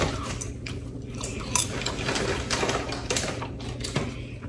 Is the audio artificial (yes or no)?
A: no